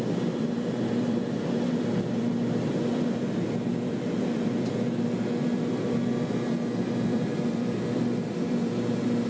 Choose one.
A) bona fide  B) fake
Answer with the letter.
B